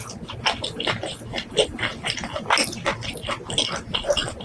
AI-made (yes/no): no